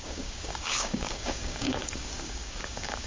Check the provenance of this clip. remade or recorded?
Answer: remade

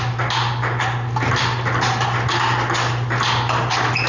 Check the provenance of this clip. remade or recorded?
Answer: recorded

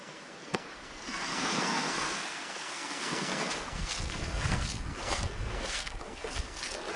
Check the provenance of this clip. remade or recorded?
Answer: remade